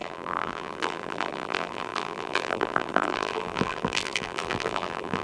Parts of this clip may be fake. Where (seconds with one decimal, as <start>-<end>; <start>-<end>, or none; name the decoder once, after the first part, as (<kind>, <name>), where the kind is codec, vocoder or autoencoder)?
0.0-5.2 (vocoder, BigVGAN v2)